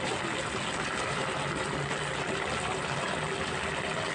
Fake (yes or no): no